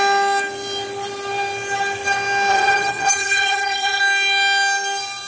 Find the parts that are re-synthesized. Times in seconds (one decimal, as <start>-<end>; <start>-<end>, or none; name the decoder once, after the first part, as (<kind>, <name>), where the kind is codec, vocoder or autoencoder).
2.5-4.0 (vocoder, HiFi-GAN)